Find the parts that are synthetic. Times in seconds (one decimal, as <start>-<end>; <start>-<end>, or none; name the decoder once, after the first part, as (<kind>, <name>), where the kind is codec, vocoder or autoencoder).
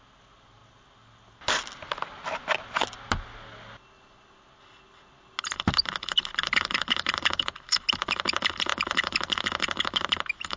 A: none